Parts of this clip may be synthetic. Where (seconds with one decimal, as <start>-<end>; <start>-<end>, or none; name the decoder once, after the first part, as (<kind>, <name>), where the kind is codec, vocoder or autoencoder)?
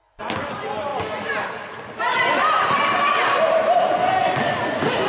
none